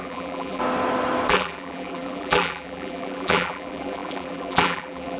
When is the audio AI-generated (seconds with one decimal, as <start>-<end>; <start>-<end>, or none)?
0.0-0.6; 1.3-5.2